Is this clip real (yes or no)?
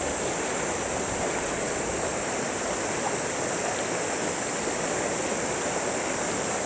yes